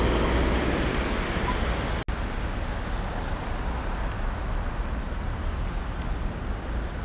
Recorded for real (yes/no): yes